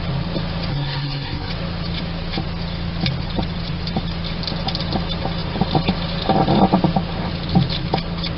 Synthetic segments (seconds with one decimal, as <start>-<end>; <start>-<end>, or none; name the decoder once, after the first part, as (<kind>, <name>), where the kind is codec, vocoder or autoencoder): 0.7-1.5 (codec, SNAC)